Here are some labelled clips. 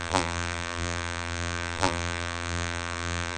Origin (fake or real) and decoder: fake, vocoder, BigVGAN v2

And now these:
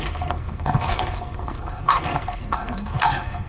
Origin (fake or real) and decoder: fake, codec, SNAC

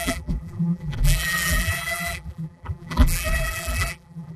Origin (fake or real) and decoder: fake, vocoder, BigVGAN v2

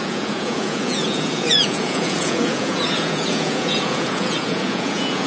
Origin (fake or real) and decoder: fake, vocoder, Vocos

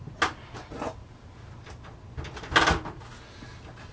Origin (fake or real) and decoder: real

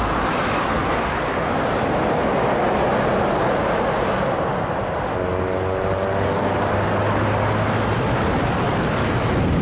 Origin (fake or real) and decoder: real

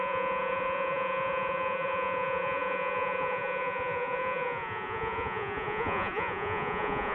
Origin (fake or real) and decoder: fake, vocoder, Vocos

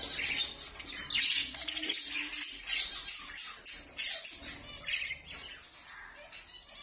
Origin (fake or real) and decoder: real